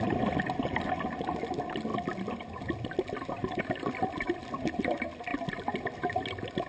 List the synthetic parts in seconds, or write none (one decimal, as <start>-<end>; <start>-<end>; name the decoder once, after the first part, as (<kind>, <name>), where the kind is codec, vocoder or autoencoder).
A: none